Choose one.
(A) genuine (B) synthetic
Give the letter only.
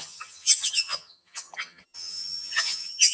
B